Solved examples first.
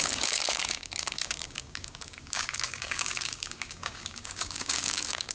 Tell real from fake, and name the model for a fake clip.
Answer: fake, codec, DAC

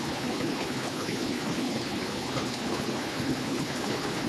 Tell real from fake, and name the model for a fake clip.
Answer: fake, codec, HILCodec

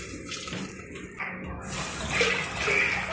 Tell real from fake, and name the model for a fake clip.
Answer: real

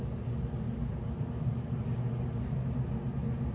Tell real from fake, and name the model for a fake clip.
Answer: real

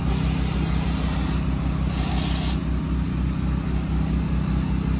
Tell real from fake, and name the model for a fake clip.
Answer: real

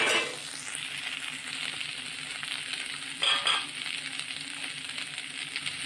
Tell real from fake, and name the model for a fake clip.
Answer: real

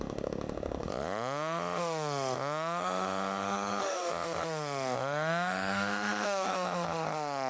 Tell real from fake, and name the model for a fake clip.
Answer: fake, autoencoder, DAC-VAE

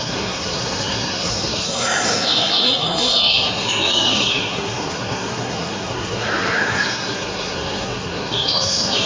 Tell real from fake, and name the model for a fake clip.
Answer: fake, codec, SNAC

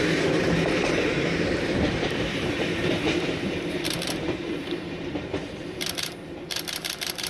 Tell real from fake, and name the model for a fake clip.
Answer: fake, vocoder, BigVGAN v2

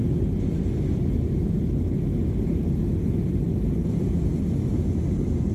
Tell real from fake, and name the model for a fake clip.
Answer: real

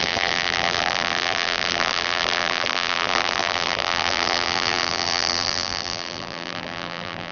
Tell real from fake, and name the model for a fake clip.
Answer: fake, vocoder, BigVGAN v2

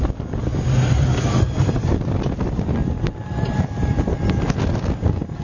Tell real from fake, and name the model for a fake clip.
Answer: real